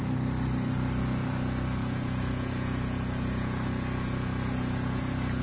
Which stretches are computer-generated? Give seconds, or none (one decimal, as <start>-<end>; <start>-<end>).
1.8-5.0